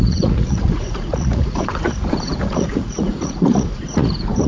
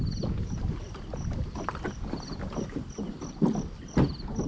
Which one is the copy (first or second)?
first